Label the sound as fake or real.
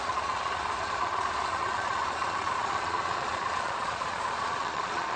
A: fake